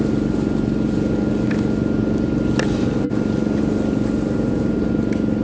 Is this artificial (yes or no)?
no